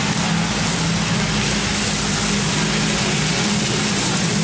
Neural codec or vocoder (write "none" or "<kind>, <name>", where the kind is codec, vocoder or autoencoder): none